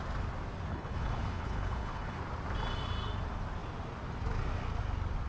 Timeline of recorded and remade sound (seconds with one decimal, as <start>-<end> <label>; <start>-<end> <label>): 0.0-0.7 recorded; 0.7-2.2 remade; 2.2-5.3 recorded